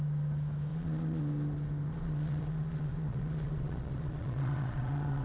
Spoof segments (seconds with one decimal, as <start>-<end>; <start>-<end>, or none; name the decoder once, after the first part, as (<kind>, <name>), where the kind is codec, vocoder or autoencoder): 0.7-1.2 (vocoder, Vocos); 1.9-5.2